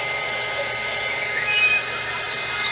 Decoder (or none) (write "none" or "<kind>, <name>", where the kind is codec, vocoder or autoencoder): vocoder, BigVGAN v2